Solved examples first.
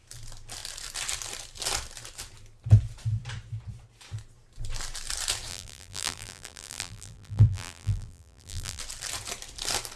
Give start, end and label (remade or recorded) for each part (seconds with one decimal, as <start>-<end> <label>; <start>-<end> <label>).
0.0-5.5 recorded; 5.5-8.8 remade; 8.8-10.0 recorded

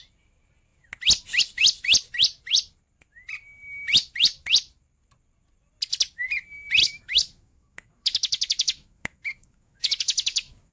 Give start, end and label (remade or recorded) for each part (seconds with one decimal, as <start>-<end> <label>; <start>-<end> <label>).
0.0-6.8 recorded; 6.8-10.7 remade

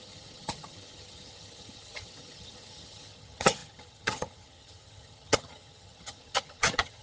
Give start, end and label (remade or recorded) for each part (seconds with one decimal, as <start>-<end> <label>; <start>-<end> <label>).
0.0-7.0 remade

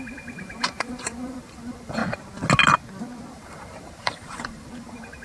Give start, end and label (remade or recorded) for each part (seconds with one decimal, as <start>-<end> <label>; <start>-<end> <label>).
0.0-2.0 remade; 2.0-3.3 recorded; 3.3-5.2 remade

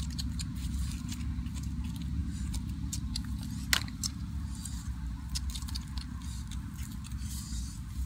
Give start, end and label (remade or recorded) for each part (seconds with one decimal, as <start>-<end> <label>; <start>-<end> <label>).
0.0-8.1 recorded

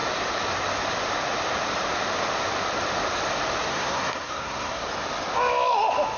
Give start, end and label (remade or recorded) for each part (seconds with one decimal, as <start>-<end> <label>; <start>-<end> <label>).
0.0-3.7 recorded; 3.7-4.8 remade; 4.8-6.2 recorded